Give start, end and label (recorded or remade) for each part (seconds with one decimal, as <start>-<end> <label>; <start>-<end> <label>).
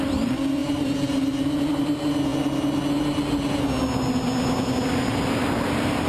0.0-2.3 remade; 2.3-5.3 recorded; 5.3-6.1 remade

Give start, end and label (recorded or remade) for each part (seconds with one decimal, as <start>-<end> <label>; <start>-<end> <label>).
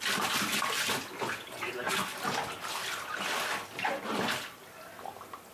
0.0-2.1 recorded; 2.1-4.0 remade; 4.0-5.5 recorded